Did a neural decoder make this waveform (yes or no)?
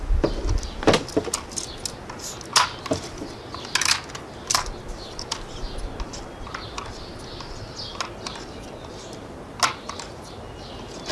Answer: no